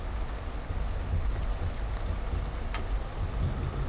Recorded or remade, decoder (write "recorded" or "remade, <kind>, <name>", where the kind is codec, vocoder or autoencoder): recorded